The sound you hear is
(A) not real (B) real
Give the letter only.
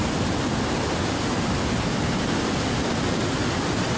B